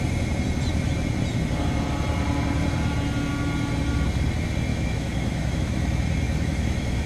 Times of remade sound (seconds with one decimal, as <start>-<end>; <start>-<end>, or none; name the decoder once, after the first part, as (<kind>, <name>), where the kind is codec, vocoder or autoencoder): 4.7-7.1 (autoencoder, DAC-VAE)